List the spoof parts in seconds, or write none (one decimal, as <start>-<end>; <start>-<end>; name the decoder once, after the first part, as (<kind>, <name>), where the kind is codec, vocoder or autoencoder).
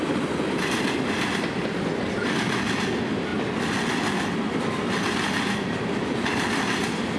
none